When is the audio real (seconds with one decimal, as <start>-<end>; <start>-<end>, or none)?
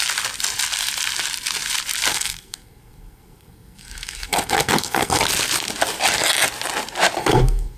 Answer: 0.0-2.1; 5.2-7.2